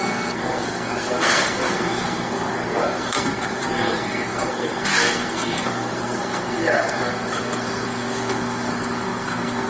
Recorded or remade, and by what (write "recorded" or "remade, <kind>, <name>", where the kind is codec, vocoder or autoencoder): remade, codec, SNAC